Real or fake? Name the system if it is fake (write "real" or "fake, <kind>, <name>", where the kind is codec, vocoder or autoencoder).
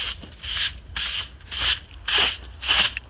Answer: real